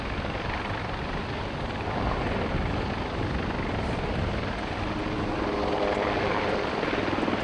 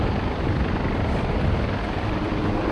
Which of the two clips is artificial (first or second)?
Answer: second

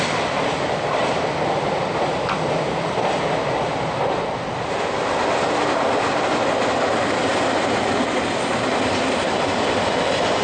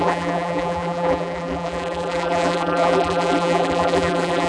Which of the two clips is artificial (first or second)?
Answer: second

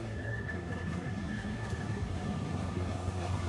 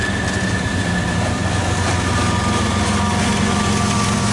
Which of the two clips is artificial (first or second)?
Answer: first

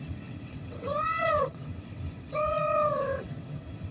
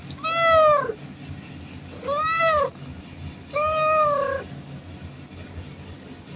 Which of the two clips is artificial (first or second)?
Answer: first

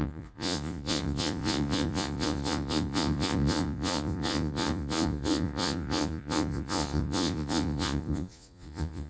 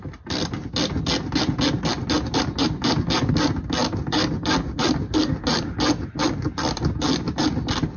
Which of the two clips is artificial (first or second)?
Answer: first